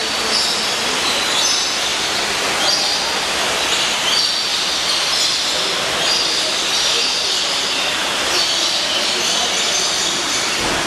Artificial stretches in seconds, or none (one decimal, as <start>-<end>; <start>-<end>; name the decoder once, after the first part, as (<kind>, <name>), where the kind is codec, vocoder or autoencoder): 0.0-1.3 (vocoder, BigVGAN v2); 4.5-9.5